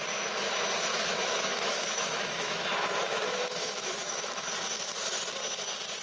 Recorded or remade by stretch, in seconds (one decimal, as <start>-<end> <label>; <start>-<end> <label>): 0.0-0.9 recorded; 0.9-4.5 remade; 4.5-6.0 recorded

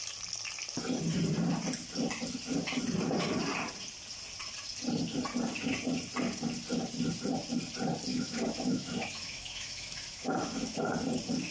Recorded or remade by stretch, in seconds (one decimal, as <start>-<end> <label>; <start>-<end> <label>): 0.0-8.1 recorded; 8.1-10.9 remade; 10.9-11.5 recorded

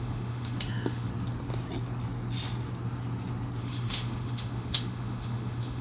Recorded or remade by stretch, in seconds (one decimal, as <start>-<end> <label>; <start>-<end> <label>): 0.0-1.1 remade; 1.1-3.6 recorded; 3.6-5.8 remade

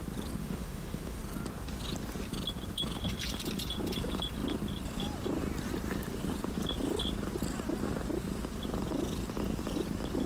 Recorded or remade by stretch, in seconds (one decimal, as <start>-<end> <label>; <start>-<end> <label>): 0.0-0.4 recorded; 0.4-1.2 remade; 1.2-10.3 recorded

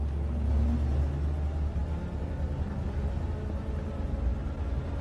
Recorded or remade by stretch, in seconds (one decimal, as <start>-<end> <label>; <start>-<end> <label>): 0.0-5.0 recorded